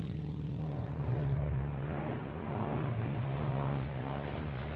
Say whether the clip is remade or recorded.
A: remade